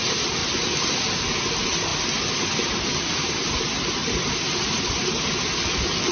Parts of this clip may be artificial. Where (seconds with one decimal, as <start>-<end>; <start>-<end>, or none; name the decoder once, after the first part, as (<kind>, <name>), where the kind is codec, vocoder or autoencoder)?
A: none